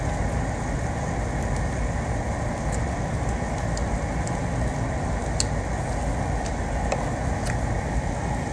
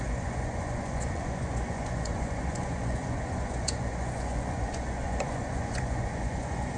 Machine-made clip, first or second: second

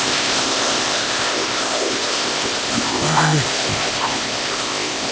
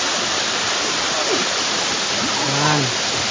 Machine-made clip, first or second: first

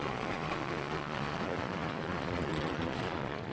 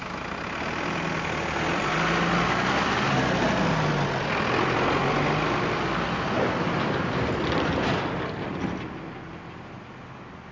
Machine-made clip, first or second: first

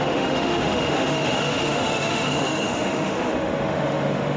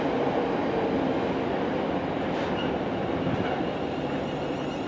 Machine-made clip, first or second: first